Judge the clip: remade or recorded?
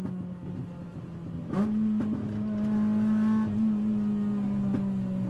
recorded